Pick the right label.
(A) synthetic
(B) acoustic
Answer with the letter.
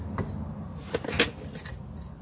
B